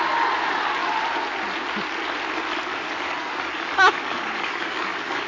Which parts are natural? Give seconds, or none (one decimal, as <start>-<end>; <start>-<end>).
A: 0.0-2.7